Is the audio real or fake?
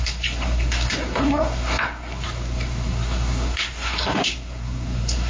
fake